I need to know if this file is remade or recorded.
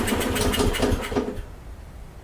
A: recorded